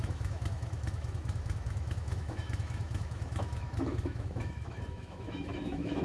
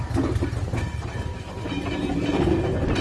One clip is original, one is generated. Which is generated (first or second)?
first